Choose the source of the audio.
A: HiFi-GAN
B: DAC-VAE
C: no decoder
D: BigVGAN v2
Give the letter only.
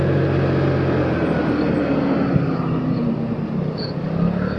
C